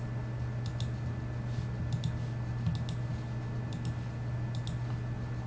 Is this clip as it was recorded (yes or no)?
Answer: yes